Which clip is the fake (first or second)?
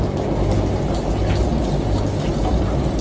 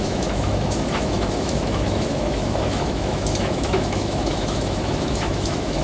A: second